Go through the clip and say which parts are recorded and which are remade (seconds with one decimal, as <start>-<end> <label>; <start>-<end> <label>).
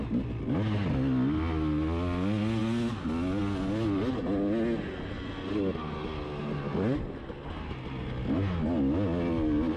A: 0.0-9.8 recorded